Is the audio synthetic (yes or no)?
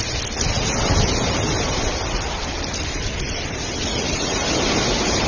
no